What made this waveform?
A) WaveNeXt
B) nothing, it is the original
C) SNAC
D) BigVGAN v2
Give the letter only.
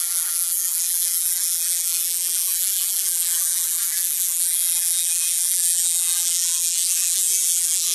D